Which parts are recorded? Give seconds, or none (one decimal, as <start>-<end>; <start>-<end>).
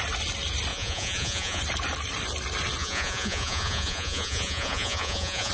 0.0-0.7; 1.6-2.8